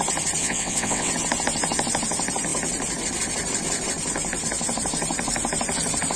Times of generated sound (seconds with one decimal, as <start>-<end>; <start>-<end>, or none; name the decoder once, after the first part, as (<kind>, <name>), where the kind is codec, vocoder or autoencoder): 0.4-1.1 (vocoder, WaveNeXt)